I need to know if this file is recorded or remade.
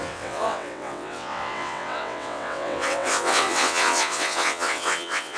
remade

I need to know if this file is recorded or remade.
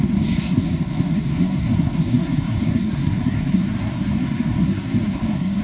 remade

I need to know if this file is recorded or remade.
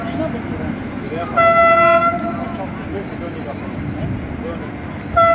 recorded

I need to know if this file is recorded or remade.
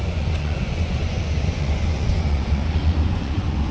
remade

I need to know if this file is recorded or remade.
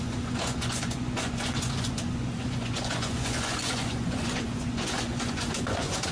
remade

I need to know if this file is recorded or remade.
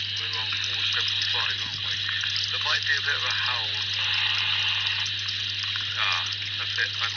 recorded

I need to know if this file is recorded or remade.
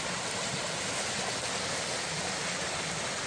recorded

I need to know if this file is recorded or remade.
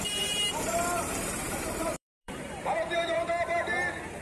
remade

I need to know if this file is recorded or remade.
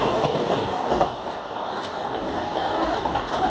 remade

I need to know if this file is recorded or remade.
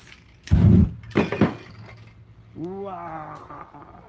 recorded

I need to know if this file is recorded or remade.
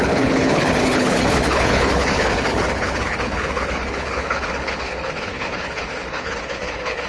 remade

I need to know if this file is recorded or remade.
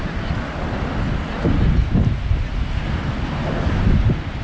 recorded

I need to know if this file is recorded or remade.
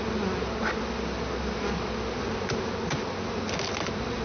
recorded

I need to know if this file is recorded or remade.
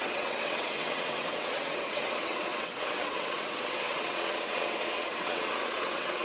remade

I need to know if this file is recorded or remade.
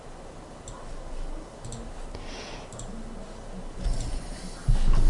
recorded